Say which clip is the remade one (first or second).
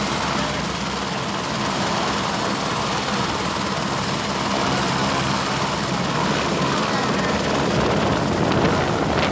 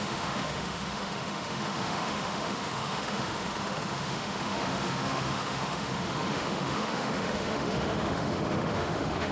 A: second